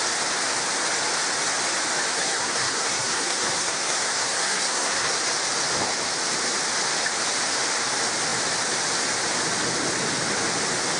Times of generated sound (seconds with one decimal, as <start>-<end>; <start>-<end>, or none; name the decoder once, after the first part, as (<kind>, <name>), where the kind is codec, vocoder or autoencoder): 2.1-5.2 (codec, SNAC)